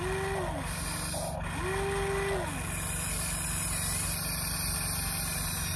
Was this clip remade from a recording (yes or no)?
no